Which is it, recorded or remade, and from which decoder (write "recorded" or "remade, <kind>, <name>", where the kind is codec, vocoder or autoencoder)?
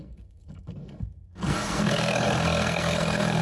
remade, codec, SNAC